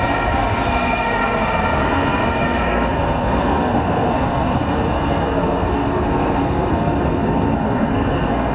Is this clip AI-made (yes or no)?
yes